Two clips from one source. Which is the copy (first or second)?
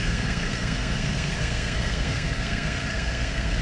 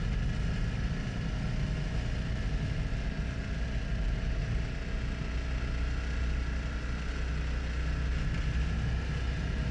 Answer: first